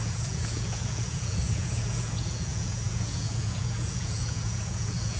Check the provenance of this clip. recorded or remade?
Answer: remade